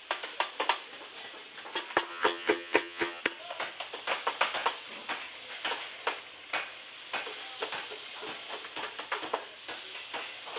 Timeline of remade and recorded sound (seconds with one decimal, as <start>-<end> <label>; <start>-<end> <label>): 0.0-2.1 recorded; 2.1-3.2 remade; 3.2-10.6 recorded